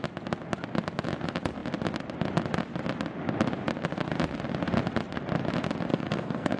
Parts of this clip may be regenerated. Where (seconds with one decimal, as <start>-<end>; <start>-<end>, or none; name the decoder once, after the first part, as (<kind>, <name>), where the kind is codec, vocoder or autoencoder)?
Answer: 5.9-6.6 (codec, SNAC)